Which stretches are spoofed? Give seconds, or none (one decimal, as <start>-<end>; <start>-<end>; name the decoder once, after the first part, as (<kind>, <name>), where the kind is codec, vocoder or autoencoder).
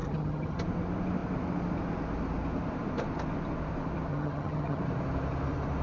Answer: 0.0-0.6 (vocoder, HiFi-GAN); 4.1-4.8